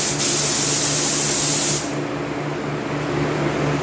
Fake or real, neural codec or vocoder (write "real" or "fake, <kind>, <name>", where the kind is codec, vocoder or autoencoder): real